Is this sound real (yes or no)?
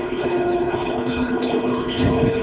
no